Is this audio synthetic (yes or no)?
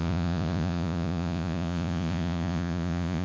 yes